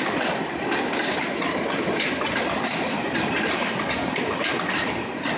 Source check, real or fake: real